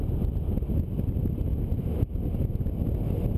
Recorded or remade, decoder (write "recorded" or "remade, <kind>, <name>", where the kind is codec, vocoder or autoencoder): recorded